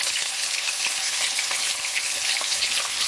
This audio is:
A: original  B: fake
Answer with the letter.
B